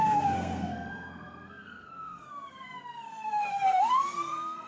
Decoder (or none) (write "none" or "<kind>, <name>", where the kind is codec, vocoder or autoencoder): codec, SNAC